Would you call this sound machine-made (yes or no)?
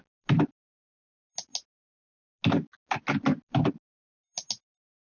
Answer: no